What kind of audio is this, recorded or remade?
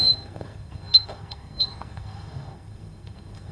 remade